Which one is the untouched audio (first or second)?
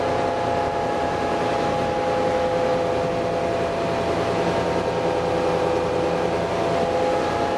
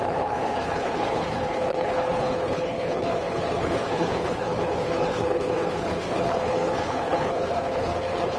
first